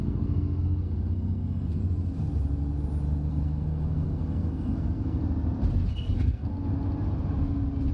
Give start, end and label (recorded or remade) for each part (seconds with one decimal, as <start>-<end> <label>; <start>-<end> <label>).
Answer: 0.0-1.8 remade; 1.8-3.3 recorded; 3.3-5.2 remade; 5.2-5.9 recorded; 5.9-6.5 remade; 6.5-7.9 recorded